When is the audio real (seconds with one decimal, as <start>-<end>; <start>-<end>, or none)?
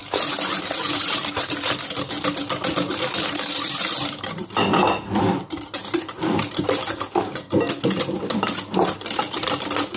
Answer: 0.0-10.0